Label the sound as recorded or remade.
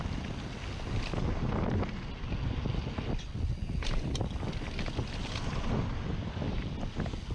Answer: recorded